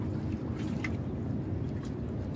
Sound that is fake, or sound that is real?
real